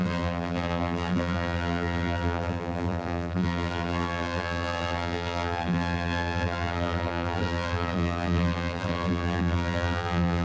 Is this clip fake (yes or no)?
yes